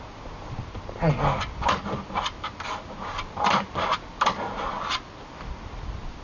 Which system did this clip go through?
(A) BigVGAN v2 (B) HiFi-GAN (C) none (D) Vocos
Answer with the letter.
C